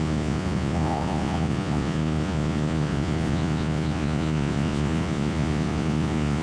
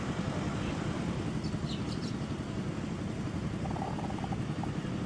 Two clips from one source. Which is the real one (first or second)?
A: second